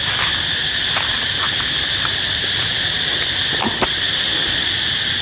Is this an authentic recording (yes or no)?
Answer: yes